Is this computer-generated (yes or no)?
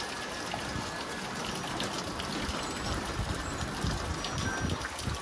no